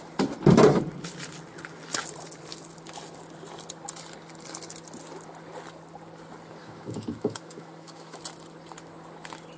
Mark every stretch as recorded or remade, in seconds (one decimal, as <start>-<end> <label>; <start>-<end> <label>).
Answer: 0.0-6.6 recorded; 6.6-8.2 remade; 8.2-9.6 recorded